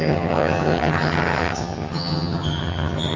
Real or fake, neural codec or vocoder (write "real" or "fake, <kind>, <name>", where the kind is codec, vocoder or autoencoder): fake, vocoder, HiFi-GAN